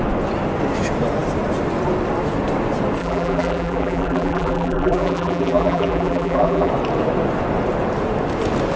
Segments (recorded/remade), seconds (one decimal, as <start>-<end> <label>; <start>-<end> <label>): 0.0-3.0 recorded; 3.0-6.7 remade; 6.7-8.8 recorded